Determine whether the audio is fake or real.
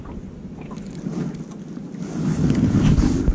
real